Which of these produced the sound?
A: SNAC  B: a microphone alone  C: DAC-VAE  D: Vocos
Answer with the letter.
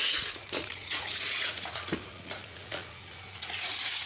D